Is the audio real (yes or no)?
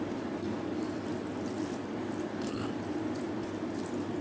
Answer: yes